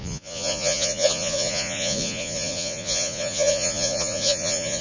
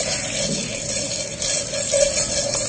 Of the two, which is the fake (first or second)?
first